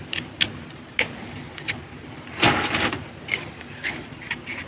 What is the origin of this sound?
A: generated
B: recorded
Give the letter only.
B